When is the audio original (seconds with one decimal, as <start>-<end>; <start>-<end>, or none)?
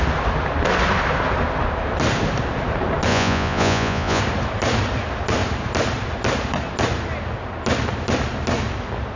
0.0-3.1; 4.2-9.2